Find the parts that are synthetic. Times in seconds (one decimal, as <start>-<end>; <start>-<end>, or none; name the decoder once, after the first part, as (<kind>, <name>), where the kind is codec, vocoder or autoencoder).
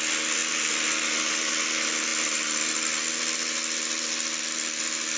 none